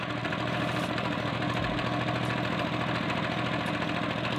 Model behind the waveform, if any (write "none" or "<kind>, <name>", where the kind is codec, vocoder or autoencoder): none